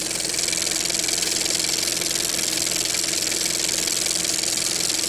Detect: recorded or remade recorded